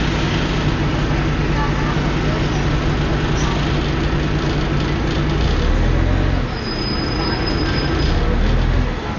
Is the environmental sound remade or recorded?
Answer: recorded